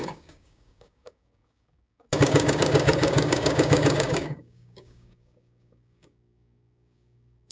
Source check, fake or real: fake